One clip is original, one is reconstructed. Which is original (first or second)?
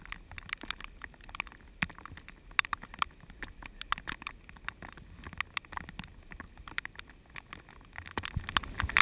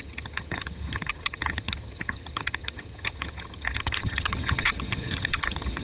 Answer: first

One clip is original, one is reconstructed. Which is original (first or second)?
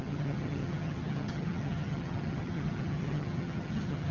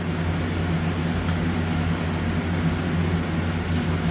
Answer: second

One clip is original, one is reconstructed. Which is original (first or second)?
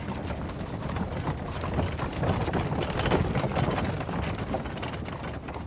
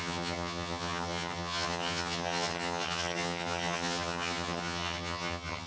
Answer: first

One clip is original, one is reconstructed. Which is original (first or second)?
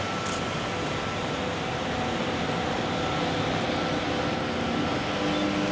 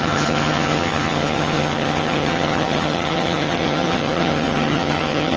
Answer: first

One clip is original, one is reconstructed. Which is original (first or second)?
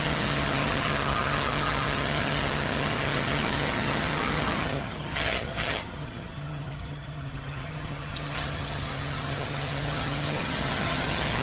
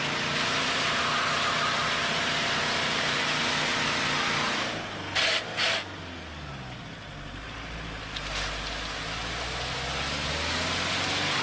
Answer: second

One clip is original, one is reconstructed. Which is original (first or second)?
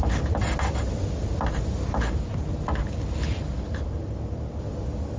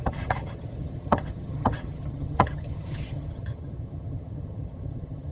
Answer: first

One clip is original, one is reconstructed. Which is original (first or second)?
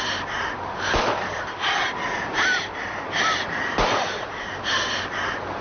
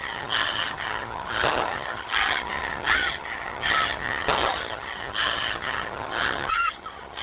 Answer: first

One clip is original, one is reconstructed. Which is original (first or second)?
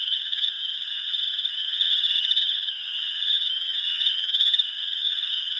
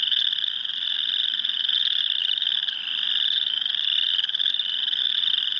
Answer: second